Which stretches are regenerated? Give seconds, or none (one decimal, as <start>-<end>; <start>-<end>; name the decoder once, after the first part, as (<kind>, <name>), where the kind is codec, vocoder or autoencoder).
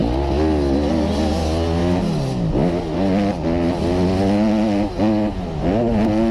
none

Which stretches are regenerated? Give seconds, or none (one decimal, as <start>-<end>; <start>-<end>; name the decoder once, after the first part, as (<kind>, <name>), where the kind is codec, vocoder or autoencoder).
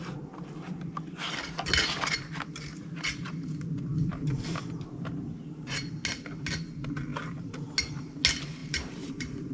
8.6-9.5 (vocoder, BigVGAN v2)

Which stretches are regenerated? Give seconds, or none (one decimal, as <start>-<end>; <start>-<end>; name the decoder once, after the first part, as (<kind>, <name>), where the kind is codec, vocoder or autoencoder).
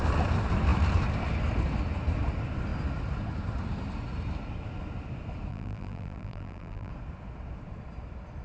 5.5-6.9 (vocoder, BigVGAN v2)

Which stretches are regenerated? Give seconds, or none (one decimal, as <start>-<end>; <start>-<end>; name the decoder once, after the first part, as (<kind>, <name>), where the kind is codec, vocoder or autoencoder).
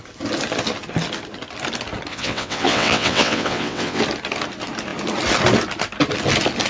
2.1-4.0 (vocoder, WaveNeXt)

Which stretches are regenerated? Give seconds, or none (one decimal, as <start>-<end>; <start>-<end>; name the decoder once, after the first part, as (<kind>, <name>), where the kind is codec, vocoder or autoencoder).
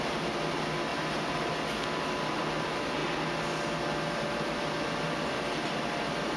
0.9-1.5 (vocoder, BigVGAN v2)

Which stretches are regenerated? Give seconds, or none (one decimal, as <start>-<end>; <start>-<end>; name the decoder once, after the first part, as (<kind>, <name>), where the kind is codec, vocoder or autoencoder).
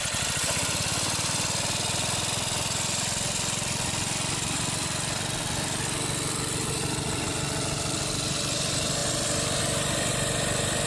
none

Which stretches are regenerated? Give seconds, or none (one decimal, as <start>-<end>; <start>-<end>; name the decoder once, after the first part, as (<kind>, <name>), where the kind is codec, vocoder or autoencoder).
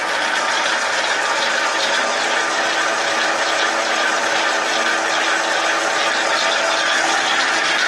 0.0-4.7 (vocoder, BigVGAN v2)